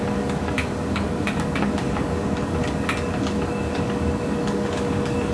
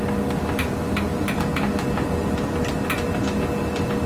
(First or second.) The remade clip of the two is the first